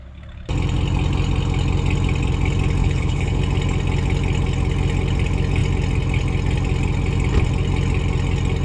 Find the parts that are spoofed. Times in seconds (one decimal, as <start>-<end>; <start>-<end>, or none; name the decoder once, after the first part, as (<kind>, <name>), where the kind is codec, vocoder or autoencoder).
2.8-3.4 (codec, HILCodec)